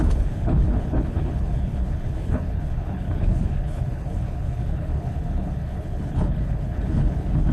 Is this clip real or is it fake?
fake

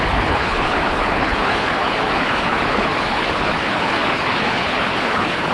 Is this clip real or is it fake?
fake